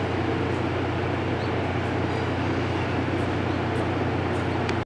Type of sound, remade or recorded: recorded